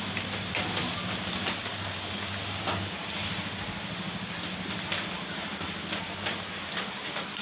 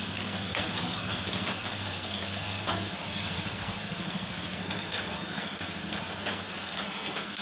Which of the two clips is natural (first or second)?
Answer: first